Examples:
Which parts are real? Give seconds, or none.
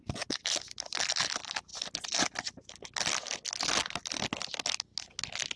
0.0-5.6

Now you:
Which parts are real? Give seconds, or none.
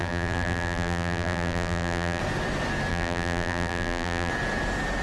2.2-2.9; 4.3-5.0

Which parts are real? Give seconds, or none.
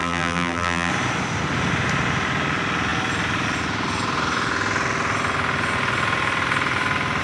0.9-7.2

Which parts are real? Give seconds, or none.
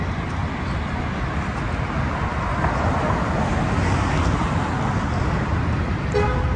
0.0-6.6